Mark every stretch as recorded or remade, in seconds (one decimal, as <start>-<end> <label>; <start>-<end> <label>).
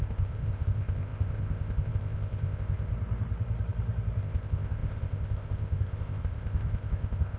0.0-2.9 remade; 2.9-4.2 recorded; 4.2-7.4 remade